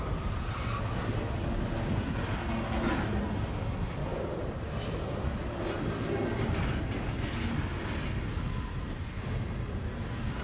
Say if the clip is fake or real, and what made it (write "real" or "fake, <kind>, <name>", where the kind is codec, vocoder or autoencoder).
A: real